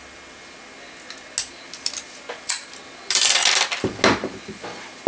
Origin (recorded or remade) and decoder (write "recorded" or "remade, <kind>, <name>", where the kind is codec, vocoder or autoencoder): recorded